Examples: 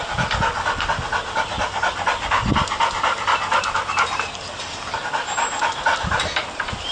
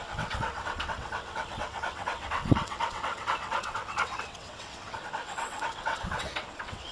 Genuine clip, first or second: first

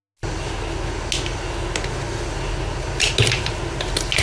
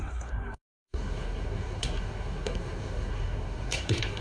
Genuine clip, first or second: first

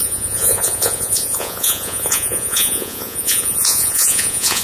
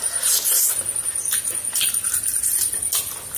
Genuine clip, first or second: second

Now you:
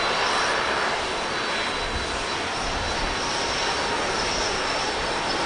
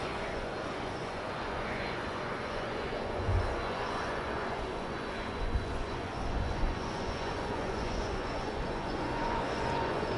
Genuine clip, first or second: first